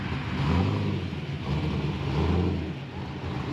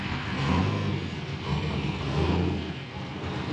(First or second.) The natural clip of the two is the first